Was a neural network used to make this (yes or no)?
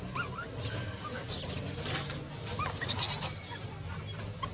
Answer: no